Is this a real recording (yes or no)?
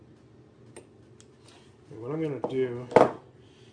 yes